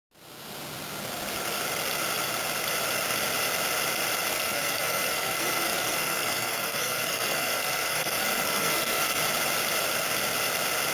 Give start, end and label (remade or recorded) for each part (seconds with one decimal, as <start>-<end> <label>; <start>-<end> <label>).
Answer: 0.0-4.3 recorded; 4.3-9.2 remade; 9.2-10.9 recorded